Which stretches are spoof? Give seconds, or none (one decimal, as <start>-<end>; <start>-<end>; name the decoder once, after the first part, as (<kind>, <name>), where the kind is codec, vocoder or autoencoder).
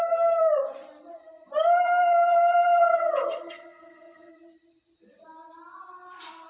2.8-4.3 (vocoder, HiFi-GAN)